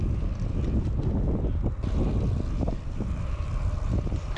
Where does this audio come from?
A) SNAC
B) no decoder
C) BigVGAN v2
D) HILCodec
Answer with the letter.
B